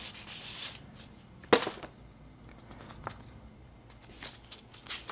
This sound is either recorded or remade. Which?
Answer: recorded